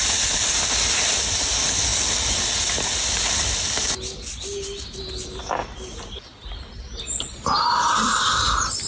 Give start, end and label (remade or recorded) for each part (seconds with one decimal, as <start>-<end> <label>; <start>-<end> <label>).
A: 0.0-8.9 recorded